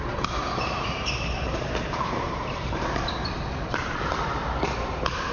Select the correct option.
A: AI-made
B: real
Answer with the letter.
A